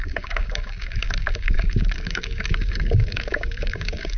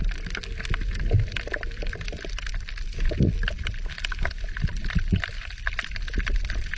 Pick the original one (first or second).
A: second